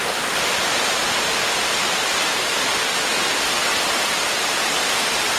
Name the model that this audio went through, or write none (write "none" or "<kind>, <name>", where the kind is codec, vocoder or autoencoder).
none